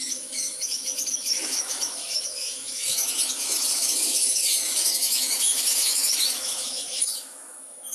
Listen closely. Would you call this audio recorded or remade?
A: remade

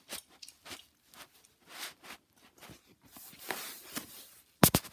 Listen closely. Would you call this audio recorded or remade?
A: recorded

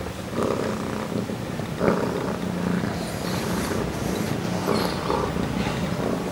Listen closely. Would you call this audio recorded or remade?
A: recorded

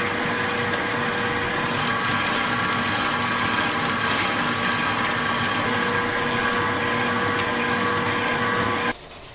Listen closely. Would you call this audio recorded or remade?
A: recorded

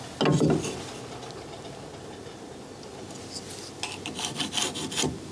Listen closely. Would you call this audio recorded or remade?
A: recorded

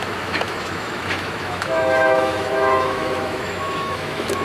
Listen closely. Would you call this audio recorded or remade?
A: remade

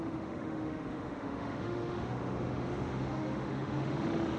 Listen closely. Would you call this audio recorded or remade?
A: remade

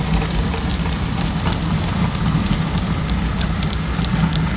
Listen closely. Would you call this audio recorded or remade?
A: recorded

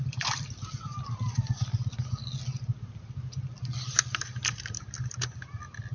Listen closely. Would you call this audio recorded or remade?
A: recorded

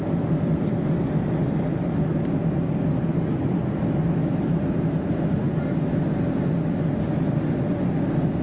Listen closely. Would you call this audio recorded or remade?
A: recorded